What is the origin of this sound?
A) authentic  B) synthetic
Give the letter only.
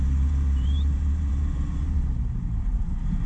B